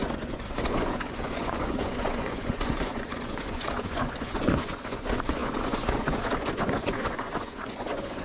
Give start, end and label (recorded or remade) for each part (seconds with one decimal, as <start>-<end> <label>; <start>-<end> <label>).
0.0-8.2 remade